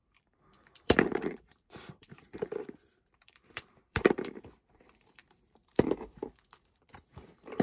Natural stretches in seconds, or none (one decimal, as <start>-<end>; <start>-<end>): none